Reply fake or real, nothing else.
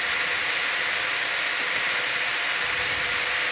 real